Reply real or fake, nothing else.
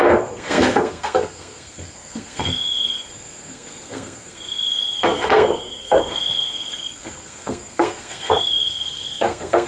fake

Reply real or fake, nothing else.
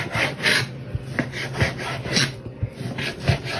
real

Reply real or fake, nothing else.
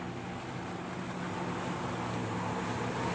real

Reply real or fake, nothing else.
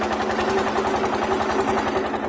real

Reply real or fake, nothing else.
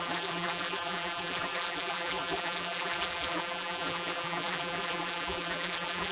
fake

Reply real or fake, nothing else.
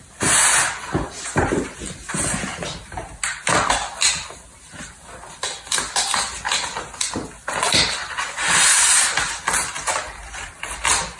real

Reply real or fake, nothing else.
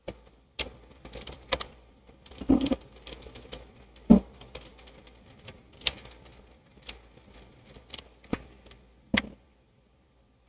real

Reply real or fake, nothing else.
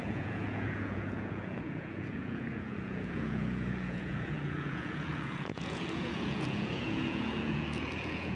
fake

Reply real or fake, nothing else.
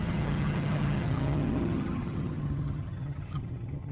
fake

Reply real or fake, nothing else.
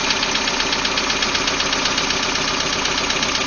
real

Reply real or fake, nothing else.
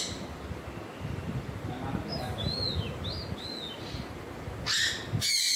real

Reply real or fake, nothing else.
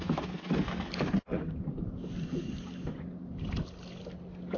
real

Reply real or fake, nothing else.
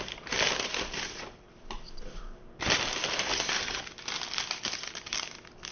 real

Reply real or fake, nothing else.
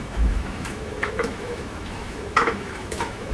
fake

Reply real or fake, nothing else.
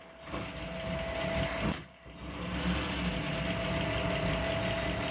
real